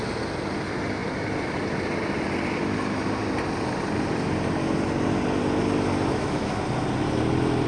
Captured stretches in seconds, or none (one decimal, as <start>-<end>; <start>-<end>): 0.0-6.1; 6.6-7.7